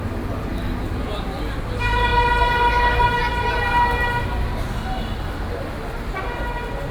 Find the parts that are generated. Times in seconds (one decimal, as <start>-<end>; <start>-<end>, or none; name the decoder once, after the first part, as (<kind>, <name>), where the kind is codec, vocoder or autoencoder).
0.5-1.4 (vocoder, BigVGAN v2)